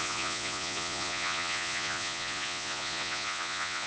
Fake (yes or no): yes